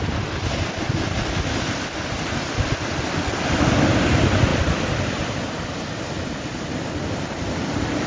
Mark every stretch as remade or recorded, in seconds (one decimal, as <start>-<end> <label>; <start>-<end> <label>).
0.0-8.1 recorded